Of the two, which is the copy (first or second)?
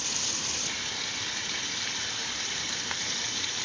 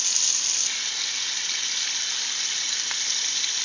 first